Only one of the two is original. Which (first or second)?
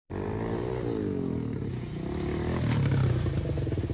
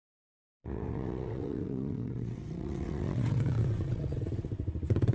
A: first